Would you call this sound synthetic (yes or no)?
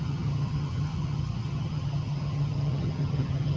yes